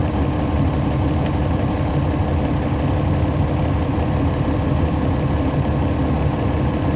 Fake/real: real